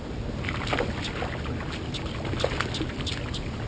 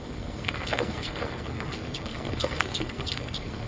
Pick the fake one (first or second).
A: second